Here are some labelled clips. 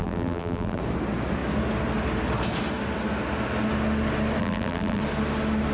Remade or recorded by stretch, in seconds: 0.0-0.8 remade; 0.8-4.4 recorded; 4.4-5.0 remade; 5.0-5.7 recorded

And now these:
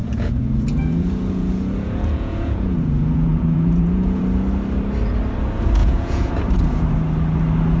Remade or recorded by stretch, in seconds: 0.0-4.2 remade; 4.2-5.8 recorded; 5.8-6.3 remade; 6.3-7.8 recorded

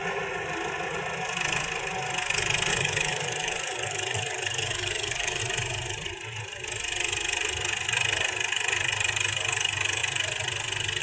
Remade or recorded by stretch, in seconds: 0.0-2.7 recorded; 2.7-5.4 remade; 5.4-11.0 recorded

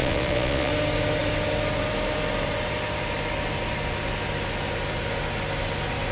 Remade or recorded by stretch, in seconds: 0.0-0.7 remade; 0.7-6.1 recorded

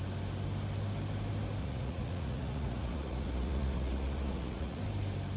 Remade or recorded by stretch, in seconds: 0.0-1.6 recorded; 1.6-4.8 remade; 4.8-5.4 recorded

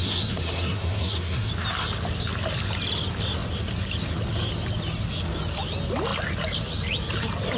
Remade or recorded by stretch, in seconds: 0.0-1.5 remade; 1.5-7.6 recorded